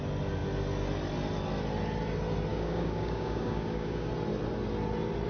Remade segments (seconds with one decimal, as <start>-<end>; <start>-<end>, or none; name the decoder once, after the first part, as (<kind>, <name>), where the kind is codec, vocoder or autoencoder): 2.5-4.1 (codec, DAC)